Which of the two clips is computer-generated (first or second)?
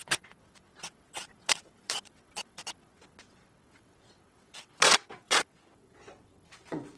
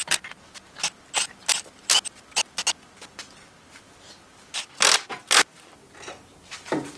first